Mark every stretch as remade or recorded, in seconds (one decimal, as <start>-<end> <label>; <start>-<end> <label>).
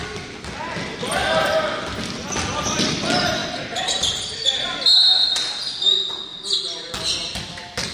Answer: 0.0-7.9 recorded